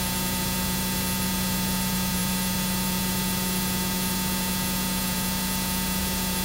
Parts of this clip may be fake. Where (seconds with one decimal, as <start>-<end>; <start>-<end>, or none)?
0.0-6.4

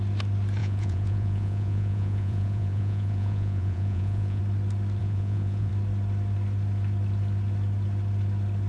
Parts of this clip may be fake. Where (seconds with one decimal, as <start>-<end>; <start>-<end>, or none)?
0.6-4.4; 5.0-5.7

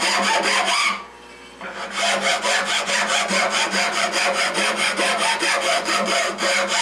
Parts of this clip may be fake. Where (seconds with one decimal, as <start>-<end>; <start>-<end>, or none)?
2.3-6.3

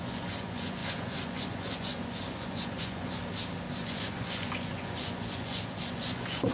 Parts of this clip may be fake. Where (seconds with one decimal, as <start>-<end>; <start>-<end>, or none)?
0.0-3.2; 3.7-6.5

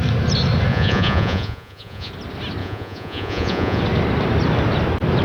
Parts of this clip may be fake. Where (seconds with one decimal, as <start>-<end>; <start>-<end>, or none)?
0.7-2.1; 2.6-3.8

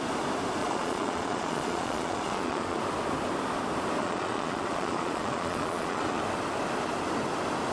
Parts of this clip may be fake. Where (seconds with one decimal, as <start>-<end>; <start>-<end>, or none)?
0.6-2.8; 4.0-6.2

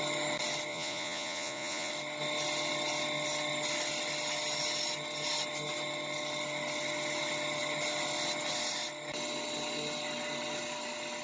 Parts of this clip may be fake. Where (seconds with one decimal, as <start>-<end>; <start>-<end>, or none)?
0.7-1.9

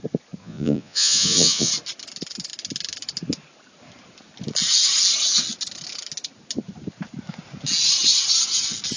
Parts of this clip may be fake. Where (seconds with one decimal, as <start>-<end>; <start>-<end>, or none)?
0.4-1.7